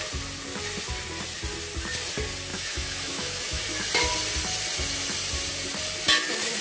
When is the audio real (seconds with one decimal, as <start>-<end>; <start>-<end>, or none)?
0.0-2.5; 3.6-6.6